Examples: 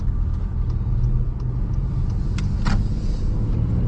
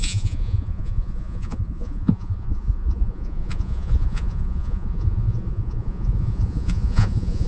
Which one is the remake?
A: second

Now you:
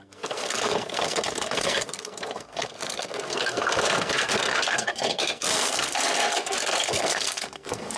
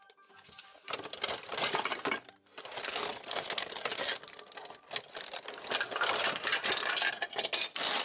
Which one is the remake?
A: first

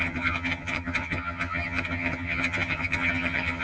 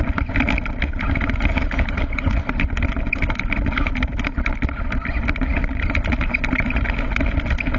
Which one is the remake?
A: first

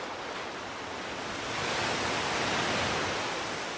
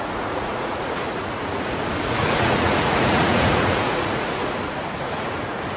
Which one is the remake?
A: second